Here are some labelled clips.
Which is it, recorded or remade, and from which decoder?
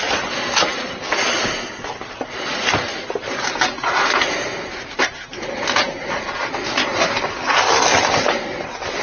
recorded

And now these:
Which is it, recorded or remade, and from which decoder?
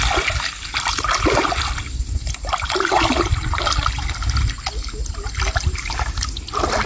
recorded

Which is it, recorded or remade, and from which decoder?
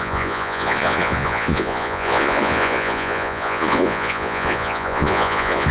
remade, vocoder, Vocos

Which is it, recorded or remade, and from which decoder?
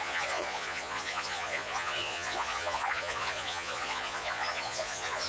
remade, vocoder, Vocos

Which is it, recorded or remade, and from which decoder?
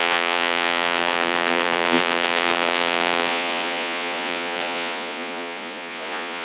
remade, vocoder, Vocos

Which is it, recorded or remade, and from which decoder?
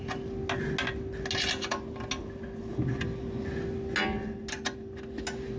recorded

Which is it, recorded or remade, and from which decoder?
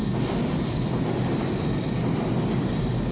recorded